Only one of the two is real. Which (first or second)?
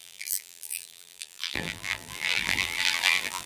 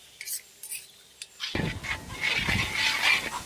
second